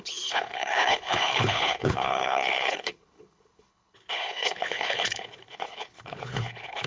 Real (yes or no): no